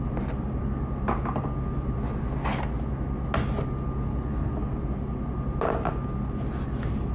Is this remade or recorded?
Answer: recorded